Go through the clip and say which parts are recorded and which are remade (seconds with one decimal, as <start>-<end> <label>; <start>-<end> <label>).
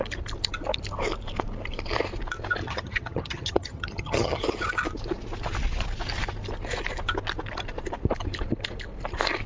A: 0.0-2.6 recorded; 2.6-4.4 remade; 4.4-9.5 recorded